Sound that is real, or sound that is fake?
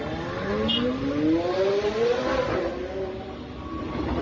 real